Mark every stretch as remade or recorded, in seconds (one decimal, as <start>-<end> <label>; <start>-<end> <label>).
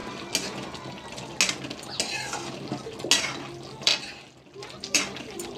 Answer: 0.0-3.4 recorded; 3.4-3.9 remade; 3.9-4.6 recorded; 4.6-5.6 remade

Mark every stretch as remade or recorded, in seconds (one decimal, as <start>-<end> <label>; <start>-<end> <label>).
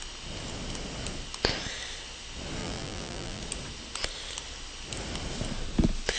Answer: 0.0-2.6 recorded; 2.6-3.4 remade; 3.4-6.2 recorded